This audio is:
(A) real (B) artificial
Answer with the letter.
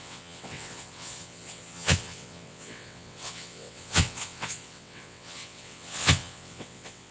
B